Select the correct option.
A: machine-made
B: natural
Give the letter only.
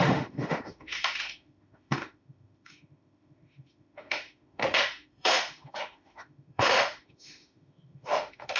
A